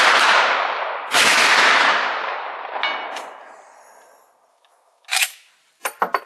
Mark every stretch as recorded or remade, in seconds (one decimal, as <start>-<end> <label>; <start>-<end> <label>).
0.0-4.5 recorded; 4.5-5.5 remade; 5.5-6.3 recorded